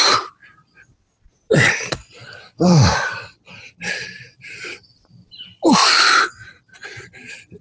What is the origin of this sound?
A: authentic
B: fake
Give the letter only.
B